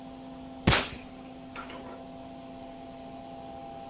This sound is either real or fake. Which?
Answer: real